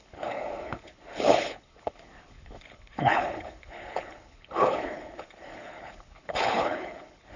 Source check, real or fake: fake